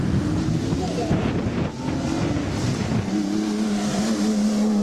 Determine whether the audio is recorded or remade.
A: recorded